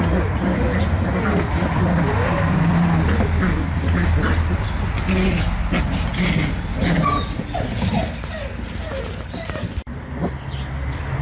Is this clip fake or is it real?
real